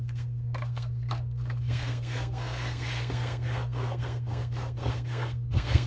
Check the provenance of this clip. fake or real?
fake